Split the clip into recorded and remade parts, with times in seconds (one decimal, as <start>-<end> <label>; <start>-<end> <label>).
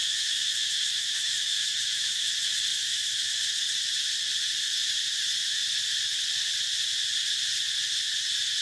0.0-2.3 remade; 2.3-2.7 recorded; 2.7-3.3 remade; 3.3-8.6 recorded